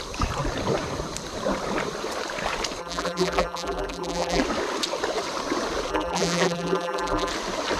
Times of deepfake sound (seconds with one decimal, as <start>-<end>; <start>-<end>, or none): 2.8-4.4; 5.9-7.3